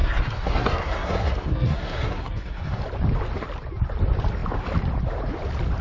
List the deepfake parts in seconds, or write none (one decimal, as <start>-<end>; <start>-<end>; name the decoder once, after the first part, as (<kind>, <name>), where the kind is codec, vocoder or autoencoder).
0.0-2.8 (codec, SNAC)